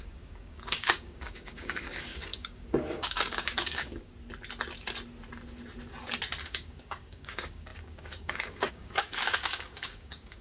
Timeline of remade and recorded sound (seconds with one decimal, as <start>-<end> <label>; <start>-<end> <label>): 0.0-4.1 remade; 4.1-6.4 recorded; 6.4-10.4 remade